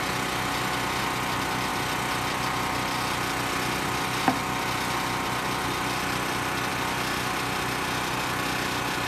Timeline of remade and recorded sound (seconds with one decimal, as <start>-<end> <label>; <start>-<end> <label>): 0.0-9.1 recorded